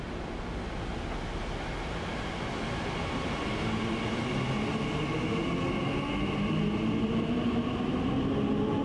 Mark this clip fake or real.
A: real